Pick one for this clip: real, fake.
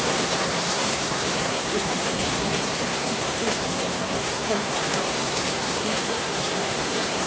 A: fake